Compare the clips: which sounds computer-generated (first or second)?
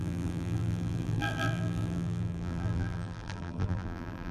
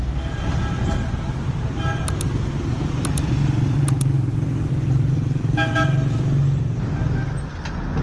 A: first